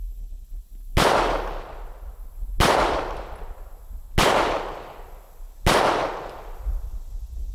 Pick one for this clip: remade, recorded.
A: recorded